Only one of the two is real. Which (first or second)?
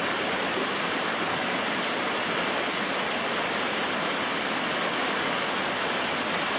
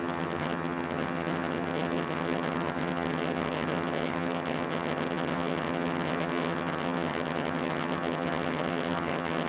first